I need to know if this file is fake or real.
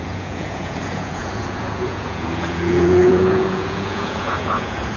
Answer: fake